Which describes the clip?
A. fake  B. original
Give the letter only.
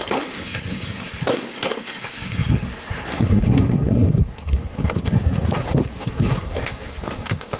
A